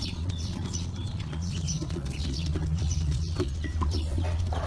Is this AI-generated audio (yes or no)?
yes